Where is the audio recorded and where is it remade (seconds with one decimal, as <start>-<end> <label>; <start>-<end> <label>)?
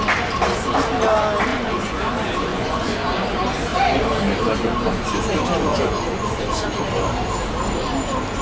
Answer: 0.0-1.5 recorded; 1.5-2.1 remade; 2.1-2.5 recorded; 2.5-3.2 remade; 3.2-5.7 recorded; 5.7-6.8 remade; 6.8-8.4 recorded